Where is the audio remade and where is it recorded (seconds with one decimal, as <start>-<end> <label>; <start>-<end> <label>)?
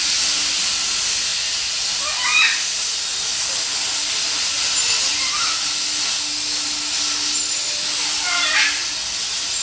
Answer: 0.0-9.6 recorded